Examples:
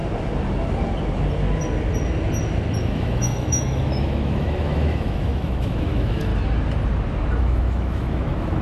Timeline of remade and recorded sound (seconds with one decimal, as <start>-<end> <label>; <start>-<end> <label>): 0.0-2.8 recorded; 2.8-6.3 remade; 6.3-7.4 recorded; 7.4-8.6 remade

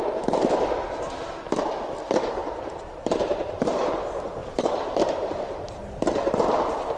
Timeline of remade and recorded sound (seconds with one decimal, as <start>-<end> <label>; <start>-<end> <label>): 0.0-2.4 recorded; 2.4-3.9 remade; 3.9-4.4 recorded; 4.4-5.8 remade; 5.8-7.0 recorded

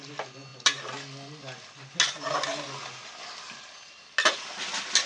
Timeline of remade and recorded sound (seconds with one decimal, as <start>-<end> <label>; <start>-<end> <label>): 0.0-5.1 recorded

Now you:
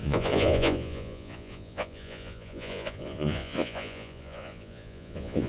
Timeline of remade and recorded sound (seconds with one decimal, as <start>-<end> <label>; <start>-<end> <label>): 0.0-5.5 remade

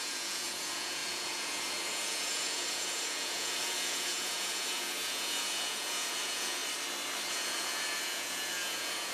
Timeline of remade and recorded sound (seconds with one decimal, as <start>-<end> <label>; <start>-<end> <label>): 0.0-6.6 remade; 6.6-7.3 recorded; 7.3-9.1 remade